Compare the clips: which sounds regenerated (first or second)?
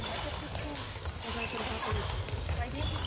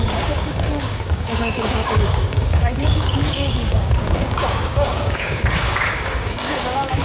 second